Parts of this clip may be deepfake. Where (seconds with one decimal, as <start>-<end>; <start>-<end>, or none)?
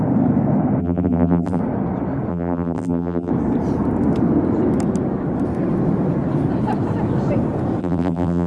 0.8-1.6; 2.3-3.3; 7.8-8.5